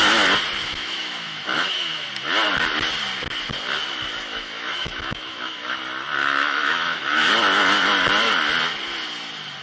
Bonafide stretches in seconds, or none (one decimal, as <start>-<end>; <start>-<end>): 0.0-0.6; 2.1-4.3; 5.8-6.2; 7.3-9.6